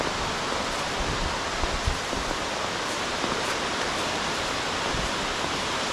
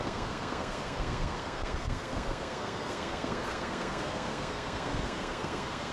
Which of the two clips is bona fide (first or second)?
first